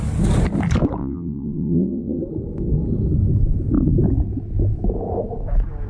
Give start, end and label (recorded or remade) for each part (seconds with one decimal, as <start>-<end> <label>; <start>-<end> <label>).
0.0-1.0 recorded; 1.0-2.2 remade; 2.2-5.9 recorded

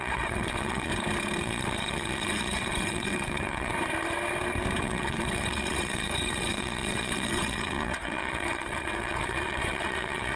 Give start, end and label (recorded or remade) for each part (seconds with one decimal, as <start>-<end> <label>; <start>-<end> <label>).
0.0-0.9 remade; 0.9-1.4 recorded; 1.4-3.7 remade; 3.7-4.8 recorded; 4.8-10.4 remade

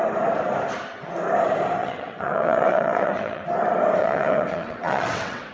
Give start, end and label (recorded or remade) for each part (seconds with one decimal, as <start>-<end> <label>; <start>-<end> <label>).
0.0-1.8 recorded; 1.8-3.4 remade; 3.4-4.0 recorded; 4.0-5.5 remade

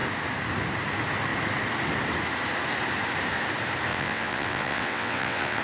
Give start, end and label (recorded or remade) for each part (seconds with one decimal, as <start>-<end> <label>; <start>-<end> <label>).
0.0-3.9 recorded; 3.9-5.6 remade

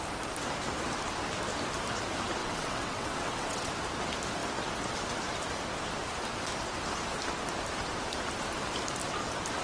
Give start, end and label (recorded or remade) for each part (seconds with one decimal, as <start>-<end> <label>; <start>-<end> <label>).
0.0-2.4 recorded; 2.4-3.7 remade; 3.7-9.6 recorded

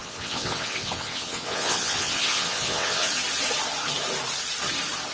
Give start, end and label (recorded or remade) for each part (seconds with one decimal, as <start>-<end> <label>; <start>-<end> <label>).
0.0-3.1 remade; 3.1-5.1 recorded

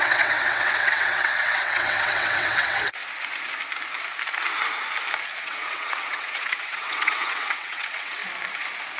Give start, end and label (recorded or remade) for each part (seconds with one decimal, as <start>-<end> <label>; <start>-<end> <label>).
0.0-3.0 remade; 3.0-5.4 recorded; 5.4-8.2 remade; 8.2-9.0 recorded

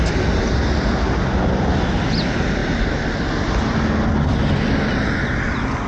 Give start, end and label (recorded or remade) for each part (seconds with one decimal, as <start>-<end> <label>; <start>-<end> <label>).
0.0-5.9 recorded